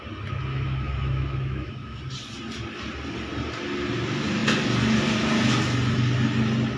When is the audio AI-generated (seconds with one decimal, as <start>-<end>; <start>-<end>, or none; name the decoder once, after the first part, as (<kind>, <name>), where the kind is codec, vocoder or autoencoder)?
0.5-2.0 (autoencoder, DAC-VAE)

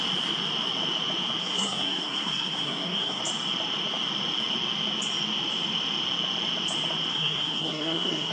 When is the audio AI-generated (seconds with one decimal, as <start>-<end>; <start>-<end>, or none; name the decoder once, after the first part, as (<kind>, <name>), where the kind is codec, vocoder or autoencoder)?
1.4-3.2 (codec, SNAC); 7.1-8.3

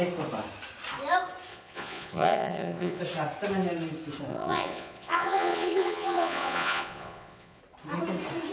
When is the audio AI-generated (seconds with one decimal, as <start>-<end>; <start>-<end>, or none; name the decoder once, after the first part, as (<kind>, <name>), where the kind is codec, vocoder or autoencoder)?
1.5-3.0 (vocoder, Vocos); 4.3-7.6

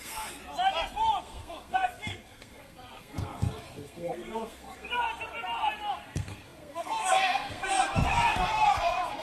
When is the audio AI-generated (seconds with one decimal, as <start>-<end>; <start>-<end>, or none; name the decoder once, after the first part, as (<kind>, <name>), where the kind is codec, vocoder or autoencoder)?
0.0-0.4 (codec, SNAC); 1.2-5.0; 5.9-9.2